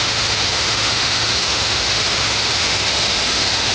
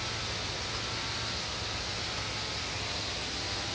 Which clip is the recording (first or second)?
second